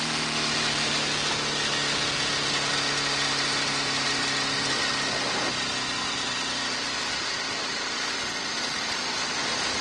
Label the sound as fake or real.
real